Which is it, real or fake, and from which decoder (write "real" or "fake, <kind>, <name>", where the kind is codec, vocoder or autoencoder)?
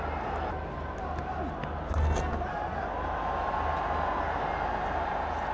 real